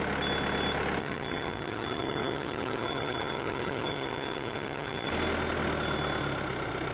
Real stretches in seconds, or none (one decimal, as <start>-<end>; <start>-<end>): 0.0-1.0; 5.1-6.9